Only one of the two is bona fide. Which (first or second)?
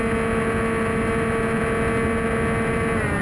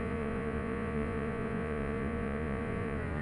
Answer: first